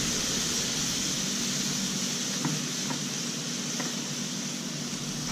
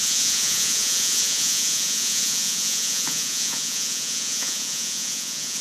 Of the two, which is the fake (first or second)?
second